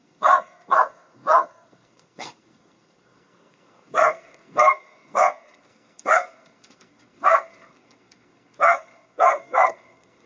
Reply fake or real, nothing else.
fake